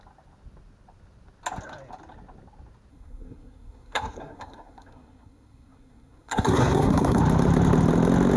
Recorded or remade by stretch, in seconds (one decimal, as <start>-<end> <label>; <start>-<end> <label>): 0.0-2.9 recorded; 2.9-7.2 remade; 7.2-8.4 recorded